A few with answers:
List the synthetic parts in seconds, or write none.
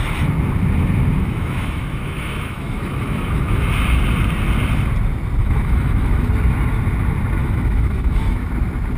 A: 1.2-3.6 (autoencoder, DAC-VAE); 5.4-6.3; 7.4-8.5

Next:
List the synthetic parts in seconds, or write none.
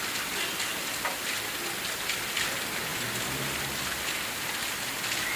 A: none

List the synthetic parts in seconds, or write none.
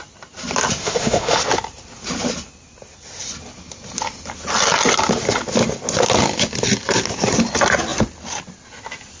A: 0.8-1.4 (autoencoder, DAC-VAE)